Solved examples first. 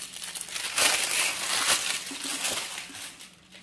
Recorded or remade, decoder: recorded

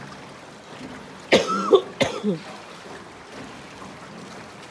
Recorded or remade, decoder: recorded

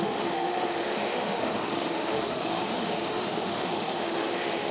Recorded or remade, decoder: remade, autoencoder, DAC-VAE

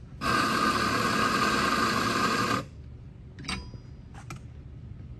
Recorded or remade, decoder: recorded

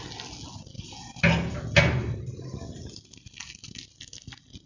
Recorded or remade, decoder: recorded